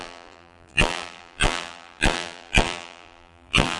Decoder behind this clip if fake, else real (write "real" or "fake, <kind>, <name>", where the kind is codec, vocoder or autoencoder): fake, vocoder, BigVGAN v2